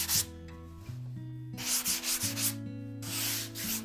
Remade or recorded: recorded